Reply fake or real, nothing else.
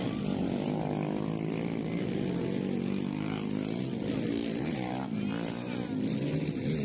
real